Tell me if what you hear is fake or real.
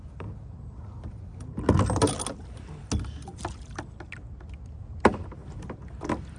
real